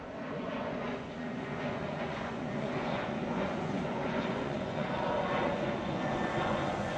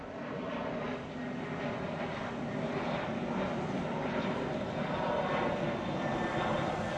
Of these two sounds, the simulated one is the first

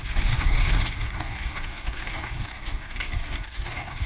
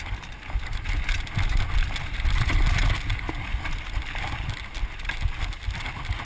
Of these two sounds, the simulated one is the first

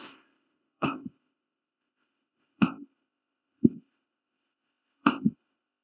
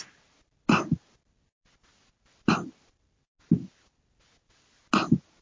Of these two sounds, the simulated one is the first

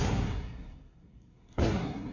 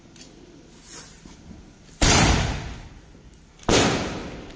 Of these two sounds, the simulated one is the first